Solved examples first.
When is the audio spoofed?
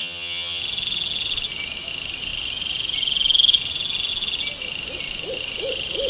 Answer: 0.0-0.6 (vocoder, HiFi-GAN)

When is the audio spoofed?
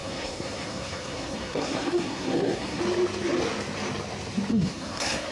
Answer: 0.0-2.8 (codec, SNAC); 4.5-5.3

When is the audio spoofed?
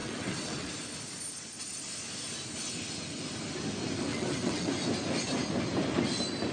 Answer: 0.0-0.7 (vocoder, WaveNeXt); 4.1-4.7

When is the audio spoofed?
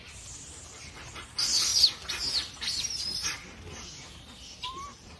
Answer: 0.0-1.7 (vocoder, BigVGAN v2); 4.1-5.2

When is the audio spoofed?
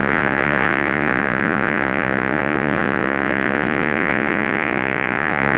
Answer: 0.0-5.6 (vocoder, Vocos)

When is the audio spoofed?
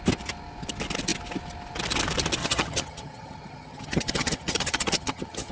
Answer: 2.4-5.5 (vocoder, HiFi-GAN)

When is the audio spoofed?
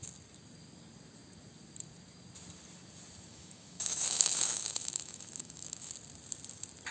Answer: 3.3-5.9 (autoencoder, DAC-VAE)